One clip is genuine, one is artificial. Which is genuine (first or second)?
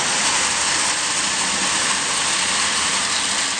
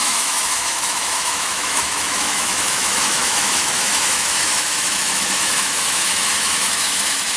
first